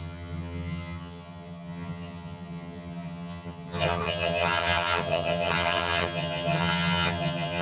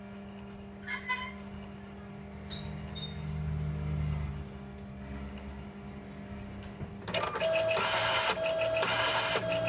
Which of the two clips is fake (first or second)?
first